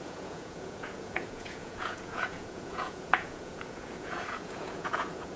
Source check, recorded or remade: remade